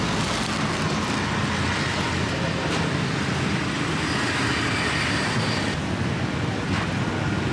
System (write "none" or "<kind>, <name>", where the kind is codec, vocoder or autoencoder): none